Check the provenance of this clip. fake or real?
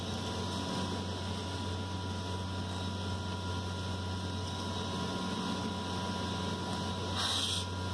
real